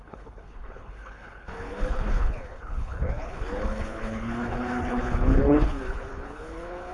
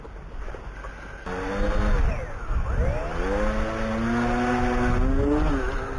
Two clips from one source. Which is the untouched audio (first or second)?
second